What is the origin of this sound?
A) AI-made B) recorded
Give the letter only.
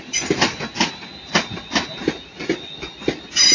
B